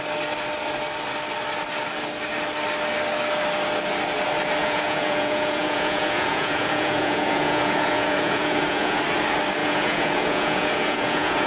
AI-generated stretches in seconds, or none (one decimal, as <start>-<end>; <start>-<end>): 4.6-9.0; 9.6-11.5

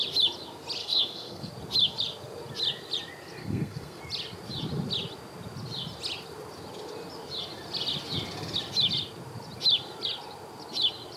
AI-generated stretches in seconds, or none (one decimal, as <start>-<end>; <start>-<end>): 0.8-1.5; 3.4-4.0

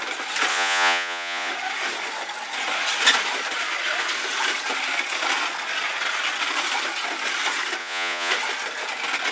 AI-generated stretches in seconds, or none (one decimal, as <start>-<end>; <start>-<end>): 0.5-1.5; 7.8-8.3

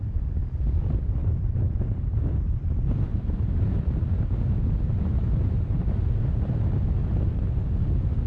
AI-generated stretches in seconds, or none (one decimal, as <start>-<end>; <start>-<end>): 1.2-2.2; 3.1-4.0; 5.8-6.7